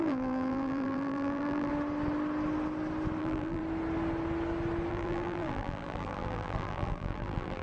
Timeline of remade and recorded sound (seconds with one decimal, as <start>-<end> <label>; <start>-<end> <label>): 0.0-1.7 remade; 1.7-3.2 recorded; 3.2-3.6 remade; 3.6-4.9 recorded; 4.9-7.6 remade